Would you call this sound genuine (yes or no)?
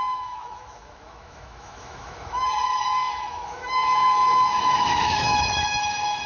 no